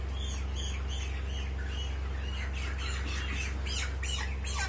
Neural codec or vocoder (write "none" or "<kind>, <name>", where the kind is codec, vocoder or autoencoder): none